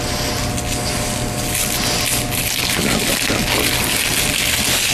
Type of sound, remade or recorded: recorded